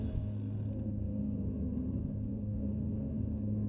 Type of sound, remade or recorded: remade